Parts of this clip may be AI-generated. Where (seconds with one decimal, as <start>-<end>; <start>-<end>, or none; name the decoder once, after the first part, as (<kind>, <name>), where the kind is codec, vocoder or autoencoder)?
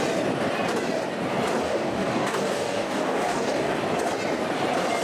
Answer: 1.6-3.8 (codec, DAC)